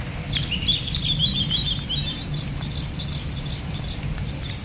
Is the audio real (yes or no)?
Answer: yes